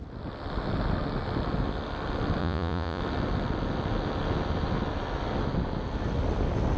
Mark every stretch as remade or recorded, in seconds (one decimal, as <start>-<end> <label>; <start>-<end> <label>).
0.0-2.4 recorded; 2.4-3.0 remade; 3.0-6.8 recorded